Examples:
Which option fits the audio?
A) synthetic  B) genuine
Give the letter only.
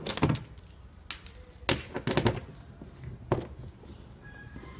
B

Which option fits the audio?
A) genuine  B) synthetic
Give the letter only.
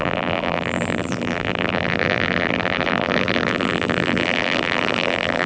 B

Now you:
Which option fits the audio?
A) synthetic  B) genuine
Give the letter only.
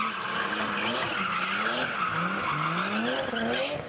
B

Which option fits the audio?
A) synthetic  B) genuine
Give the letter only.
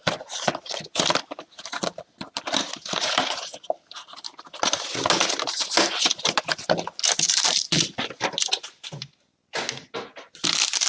B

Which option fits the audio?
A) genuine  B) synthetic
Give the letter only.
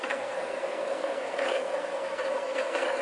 B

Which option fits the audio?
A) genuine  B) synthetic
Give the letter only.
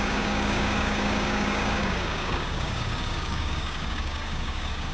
B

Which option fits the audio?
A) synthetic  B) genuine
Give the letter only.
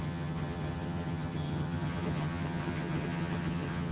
A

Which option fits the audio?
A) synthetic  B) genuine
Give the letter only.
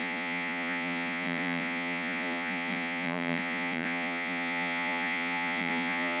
A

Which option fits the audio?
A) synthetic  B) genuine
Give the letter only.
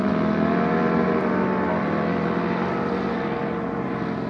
B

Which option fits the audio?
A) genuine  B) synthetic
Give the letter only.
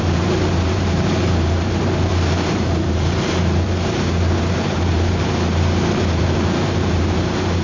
B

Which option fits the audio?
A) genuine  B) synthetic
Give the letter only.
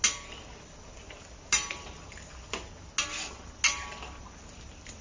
A